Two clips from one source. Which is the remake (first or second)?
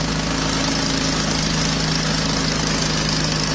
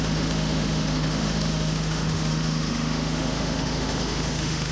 second